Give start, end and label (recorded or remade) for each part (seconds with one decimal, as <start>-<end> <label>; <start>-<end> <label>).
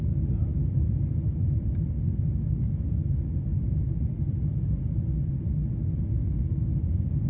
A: 0.0-0.5 recorded; 0.5-2.1 remade; 2.1-3.5 recorded; 3.5-4.1 remade; 4.1-7.3 recorded